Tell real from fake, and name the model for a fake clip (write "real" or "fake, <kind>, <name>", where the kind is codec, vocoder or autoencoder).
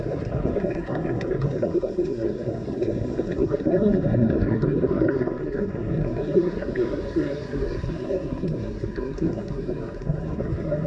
fake, codec, SNAC